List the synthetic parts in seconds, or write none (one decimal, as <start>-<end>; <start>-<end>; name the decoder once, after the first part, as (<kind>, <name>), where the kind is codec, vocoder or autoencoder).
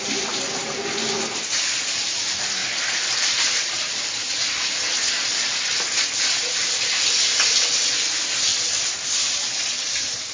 2.6-4.1 (vocoder, BigVGAN v2)